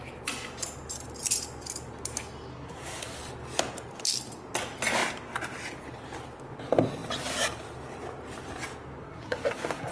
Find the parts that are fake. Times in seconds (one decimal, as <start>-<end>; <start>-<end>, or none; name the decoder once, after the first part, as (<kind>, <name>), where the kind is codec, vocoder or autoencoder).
2.5-3.2 (codec, SNAC); 9.0-9.9